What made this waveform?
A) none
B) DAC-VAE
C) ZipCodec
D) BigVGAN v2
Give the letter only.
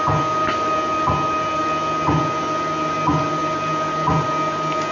A